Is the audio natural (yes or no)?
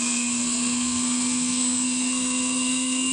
no